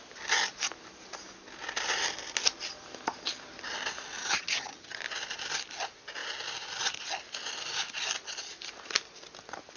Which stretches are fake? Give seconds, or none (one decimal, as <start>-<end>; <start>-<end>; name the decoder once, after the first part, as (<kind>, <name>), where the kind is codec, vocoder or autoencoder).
4.2-5.0 (vocoder, HiFi-GAN)